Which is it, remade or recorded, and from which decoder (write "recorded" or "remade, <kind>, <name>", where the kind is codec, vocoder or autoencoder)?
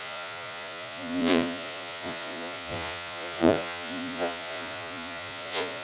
remade, vocoder, Vocos